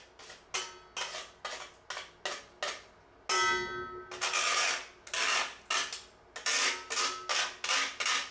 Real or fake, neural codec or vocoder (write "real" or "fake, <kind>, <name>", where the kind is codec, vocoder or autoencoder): real